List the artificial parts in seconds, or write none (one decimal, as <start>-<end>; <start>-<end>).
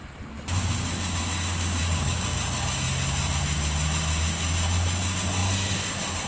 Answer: 1.8-2.4